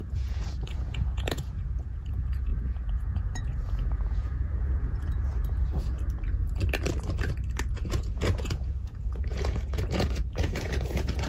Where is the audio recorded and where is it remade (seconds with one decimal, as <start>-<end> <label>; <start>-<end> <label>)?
0.0-5.3 remade; 5.3-7.7 recorded; 7.7-11.3 remade